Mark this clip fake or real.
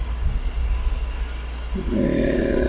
real